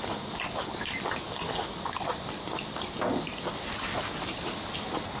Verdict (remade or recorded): recorded